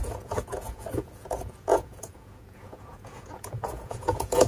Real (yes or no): no